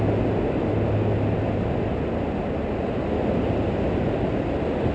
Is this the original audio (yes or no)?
yes